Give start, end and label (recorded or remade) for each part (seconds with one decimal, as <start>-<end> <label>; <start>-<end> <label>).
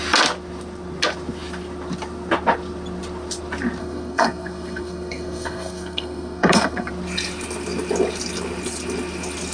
0.0-3.8 recorded; 3.8-6.9 remade; 6.9-9.5 recorded